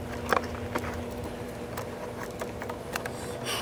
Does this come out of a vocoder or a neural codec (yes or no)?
no